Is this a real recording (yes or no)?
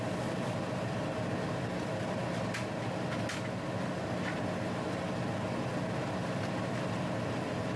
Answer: yes